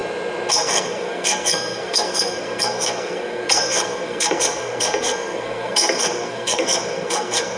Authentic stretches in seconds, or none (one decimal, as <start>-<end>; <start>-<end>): 0.0-0.5